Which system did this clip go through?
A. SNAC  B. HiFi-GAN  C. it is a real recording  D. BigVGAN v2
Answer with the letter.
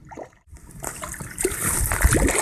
D